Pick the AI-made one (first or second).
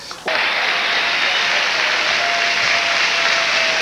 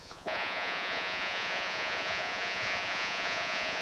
second